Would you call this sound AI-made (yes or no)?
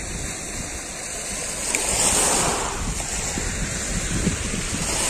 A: no